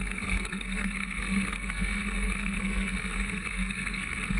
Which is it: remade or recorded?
remade